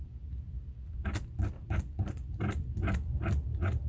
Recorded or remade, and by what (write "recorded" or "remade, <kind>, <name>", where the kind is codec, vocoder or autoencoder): recorded